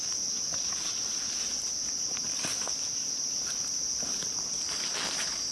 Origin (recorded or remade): recorded